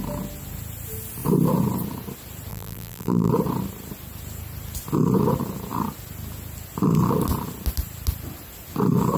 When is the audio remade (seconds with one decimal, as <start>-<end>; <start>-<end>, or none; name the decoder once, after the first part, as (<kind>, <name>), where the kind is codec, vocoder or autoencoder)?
2.5-3.3 (vocoder, BigVGAN v2)

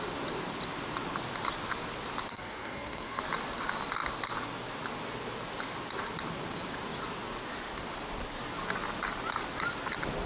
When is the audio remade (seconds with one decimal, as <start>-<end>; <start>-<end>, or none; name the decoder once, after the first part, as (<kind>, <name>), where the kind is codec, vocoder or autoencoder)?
2.3-3.2 (codec, SNAC)

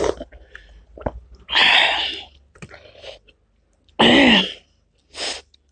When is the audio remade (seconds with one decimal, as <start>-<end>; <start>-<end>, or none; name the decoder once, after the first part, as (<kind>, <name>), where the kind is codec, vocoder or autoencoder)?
none

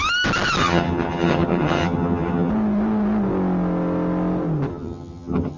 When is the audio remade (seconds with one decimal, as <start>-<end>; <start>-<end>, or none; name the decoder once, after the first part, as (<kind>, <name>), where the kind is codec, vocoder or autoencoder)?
0.6-2.5 (vocoder, HiFi-GAN); 4.7-5.6